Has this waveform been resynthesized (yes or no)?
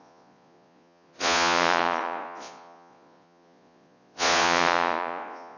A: yes